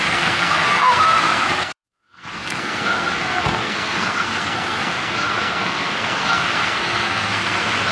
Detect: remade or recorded remade